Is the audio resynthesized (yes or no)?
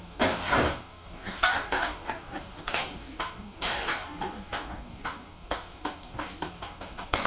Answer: yes